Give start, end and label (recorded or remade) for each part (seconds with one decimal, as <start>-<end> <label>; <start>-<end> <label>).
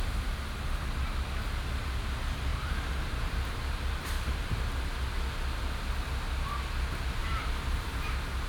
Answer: 0.0-2.5 recorded; 2.5-4.8 remade; 4.8-7.2 recorded; 7.2-8.1 remade; 8.1-8.5 recorded